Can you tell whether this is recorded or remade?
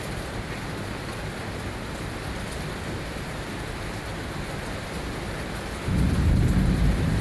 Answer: recorded